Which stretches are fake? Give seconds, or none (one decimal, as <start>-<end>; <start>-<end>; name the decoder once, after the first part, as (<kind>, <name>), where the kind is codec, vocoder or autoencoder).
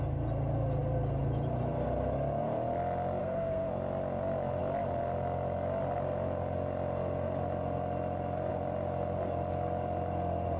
3.2-3.7 (codec, SNAC)